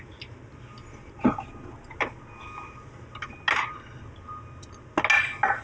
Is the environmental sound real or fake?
real